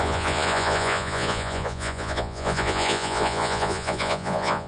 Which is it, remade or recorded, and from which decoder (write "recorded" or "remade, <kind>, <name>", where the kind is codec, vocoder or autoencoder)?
remade, vocoder, Vocos